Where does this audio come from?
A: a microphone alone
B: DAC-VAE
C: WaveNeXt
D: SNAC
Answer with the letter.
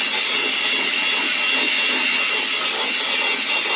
A